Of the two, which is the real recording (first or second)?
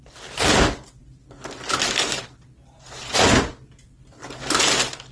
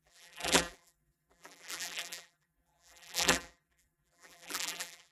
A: first